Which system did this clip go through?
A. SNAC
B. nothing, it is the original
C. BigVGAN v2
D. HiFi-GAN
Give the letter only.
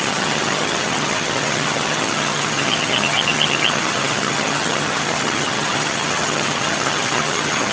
D